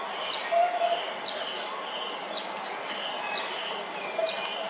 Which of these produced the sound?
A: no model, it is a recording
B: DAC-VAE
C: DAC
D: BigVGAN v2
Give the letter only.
A